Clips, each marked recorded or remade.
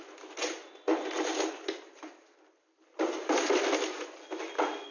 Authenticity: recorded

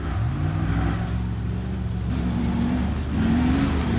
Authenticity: recorded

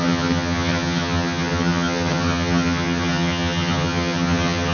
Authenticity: remade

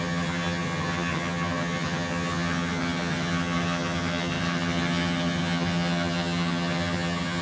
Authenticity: remade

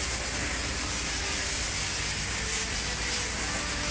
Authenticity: recorded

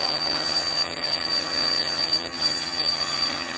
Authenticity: remade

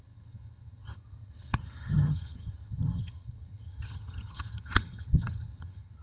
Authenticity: remade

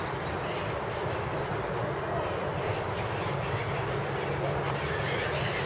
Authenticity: recorded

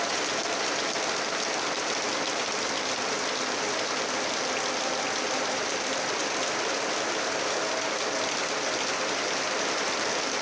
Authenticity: recorded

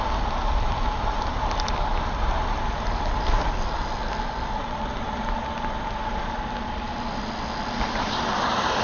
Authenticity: recorded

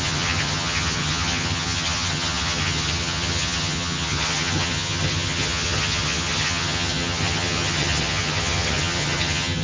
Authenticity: remade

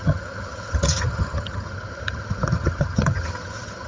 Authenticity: remade